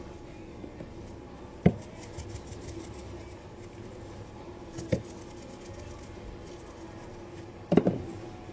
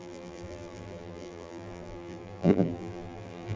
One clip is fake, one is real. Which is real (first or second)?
first